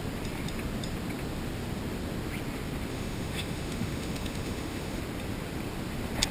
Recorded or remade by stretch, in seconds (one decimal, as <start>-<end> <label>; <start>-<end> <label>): 0.0-2.9 recorded; 2.9-5.0 remade; 5.0-6.3 recorded